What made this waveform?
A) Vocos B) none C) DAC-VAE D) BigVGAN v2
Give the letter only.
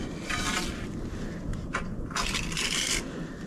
B